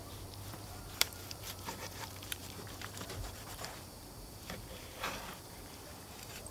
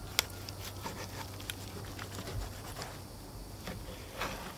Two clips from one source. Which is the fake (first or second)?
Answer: first